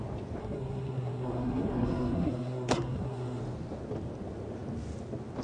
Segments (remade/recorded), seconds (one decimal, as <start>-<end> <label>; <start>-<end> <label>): 0.0-0.4 recorded; 0.4-3.4 remade; 3.4-5.4 recorded